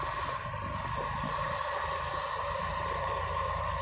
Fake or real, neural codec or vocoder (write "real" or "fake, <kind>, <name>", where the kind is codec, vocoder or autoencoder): real